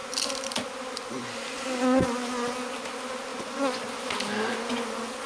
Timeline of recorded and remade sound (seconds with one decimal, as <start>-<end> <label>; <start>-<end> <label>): 0.0-3.3 recorded; 3.3-3.8 remade; 3.8-5.3 recorded